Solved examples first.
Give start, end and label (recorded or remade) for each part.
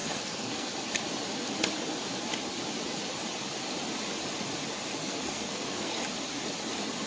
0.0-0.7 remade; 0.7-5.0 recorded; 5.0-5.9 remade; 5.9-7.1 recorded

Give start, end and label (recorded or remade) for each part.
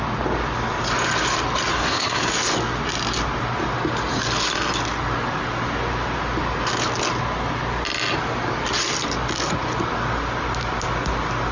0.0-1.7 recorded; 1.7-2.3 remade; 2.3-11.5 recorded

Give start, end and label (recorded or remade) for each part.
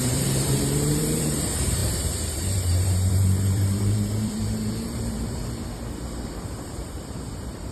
0.0-5.4 remade; 5.4-6.3 recorded; 6.3-7.7 remade